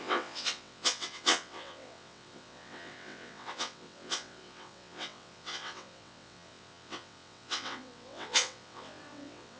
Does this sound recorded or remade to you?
remade